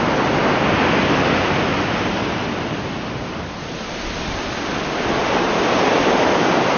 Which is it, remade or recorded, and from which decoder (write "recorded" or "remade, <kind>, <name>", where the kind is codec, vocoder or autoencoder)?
recorded